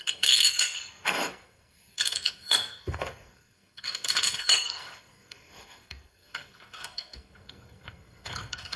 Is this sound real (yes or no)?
no